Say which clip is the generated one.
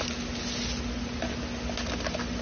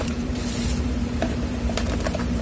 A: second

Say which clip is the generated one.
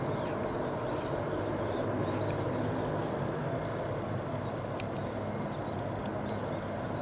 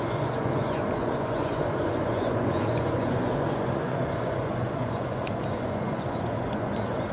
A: second